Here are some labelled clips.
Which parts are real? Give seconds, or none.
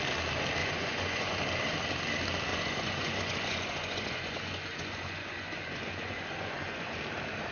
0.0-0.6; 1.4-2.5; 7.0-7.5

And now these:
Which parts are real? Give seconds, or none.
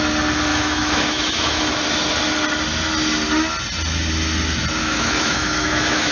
0.0-0.5; 1.6-4.8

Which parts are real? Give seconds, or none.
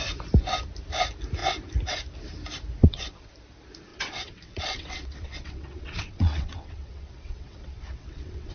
0.0-2.8; 3.3-3.9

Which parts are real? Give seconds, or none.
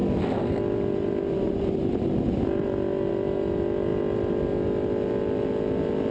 0.0-6.1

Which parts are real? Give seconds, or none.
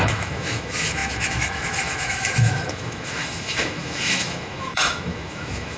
none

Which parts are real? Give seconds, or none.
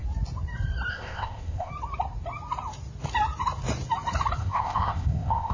0.0-0.9; 1.7-4.4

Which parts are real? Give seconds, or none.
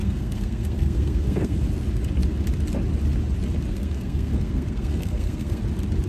1.7-3.7; 5.6-6.1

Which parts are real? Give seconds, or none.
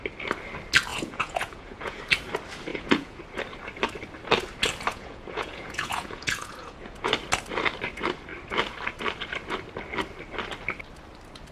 0.0-0.9; 2.0-2.7; 3.2-4.9; 7.1-11.5